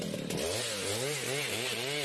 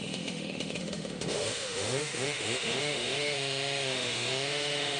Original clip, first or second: first